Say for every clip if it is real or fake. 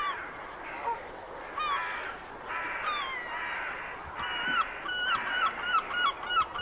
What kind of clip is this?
real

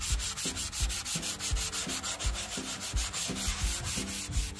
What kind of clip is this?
real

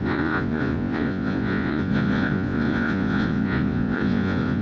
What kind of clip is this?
fake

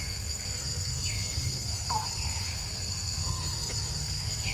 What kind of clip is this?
fake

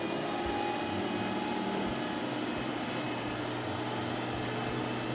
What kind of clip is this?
real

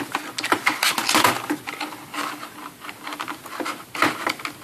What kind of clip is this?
real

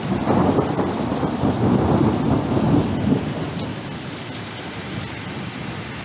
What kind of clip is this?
real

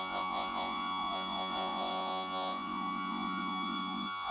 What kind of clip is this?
fake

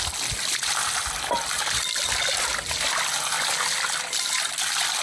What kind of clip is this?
real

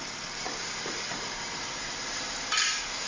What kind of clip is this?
real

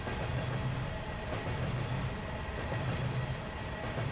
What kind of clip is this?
real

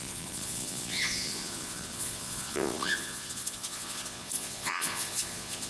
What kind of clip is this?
fake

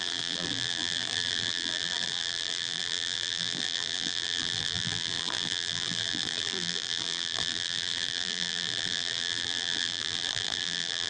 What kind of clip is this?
fake